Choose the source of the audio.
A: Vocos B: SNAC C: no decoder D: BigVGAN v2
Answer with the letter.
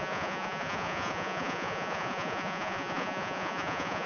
A